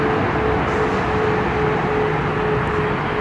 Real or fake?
real